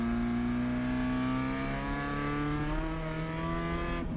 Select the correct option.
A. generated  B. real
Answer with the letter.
B